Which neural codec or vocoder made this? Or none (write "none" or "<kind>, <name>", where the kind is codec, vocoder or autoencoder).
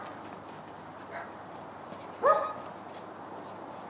none